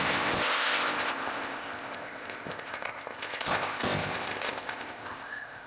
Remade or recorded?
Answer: remade